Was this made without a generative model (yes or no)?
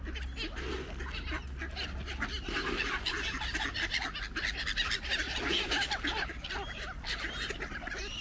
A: yes